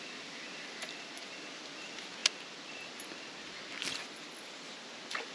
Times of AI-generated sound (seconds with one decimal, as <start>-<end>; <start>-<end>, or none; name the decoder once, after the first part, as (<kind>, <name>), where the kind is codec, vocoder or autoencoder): none